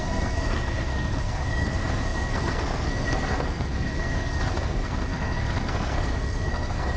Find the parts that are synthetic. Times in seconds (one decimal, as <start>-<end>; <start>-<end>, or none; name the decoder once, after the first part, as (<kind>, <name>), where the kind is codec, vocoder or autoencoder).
0.0-7.0 (codec, SNAC)